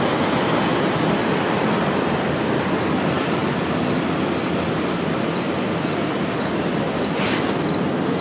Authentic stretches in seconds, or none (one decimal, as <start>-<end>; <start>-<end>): 0.0-8.2